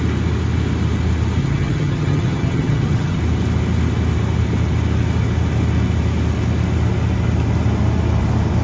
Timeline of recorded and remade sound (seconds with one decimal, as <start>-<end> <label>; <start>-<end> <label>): 0.0-1.4 recorded; 1.4-3.2 remade; 3.2-8.6 recorded